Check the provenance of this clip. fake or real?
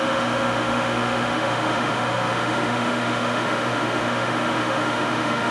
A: fake